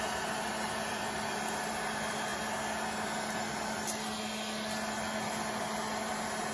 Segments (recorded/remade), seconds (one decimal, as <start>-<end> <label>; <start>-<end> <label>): 0.0-6.5 recorded